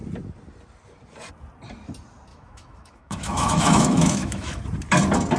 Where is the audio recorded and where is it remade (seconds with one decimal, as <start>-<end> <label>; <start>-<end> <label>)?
0.0-2.3 recorded; 2.3-4.6 remade; 4.6-5.4 recorded